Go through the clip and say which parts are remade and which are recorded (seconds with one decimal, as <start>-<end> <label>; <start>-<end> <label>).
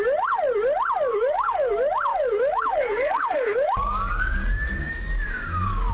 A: 0.0-1.1 recorded; 1.1-1.7 remade; 1.7-2.1 recorded; 2.1-5.9 remade